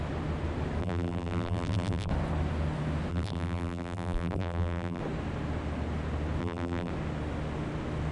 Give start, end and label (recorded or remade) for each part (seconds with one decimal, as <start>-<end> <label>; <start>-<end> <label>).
0.0-0.8 recorded; 0.8-2.1 remade; 2.1-3.1 recorded; 3.1-5.0 remade; 5.0-6.4 recorded; 6.4-6.9 remade; 6.9-8.1 recorded

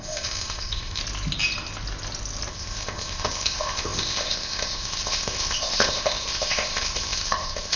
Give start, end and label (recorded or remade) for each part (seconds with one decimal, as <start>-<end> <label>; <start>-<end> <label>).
0.0-1.0 remade; 1.0-2.5 recorded; 2.5-7.8 remade